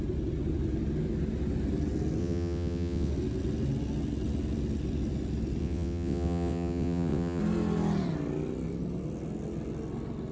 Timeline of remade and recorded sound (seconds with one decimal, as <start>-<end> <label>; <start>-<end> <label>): 0.0-2.2 recorded; 2.2-3.1 remade; 3.1-5.6 recorded; 5.6-7.4 remade; 7.4-10.3 recorded